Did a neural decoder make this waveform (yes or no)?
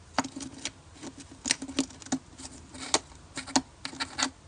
no